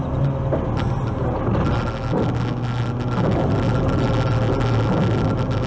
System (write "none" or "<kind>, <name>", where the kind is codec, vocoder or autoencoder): none